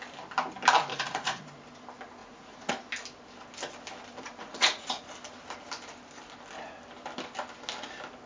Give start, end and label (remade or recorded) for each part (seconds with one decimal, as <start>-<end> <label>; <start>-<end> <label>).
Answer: 0.0-0.9 recorded; 0.9-1.4 remade; 1.4-2.2 recorded; 2.2-2.7 remade; 2.7-4.4 recorded; 4.4-5.0 remade; 5.0-8.3 recorded

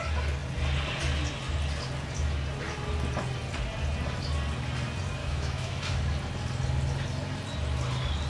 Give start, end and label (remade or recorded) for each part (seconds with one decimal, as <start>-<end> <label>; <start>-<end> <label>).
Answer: 0.0-5.2 recorded; 5.2-5.8 remade; 5.8-8.3 recorded

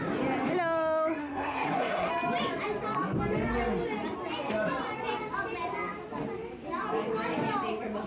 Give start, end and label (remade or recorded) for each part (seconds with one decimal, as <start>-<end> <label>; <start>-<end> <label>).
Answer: 0.0-1.2 recorded; 1.2-2.1 remade; 2.1-8.1 recorded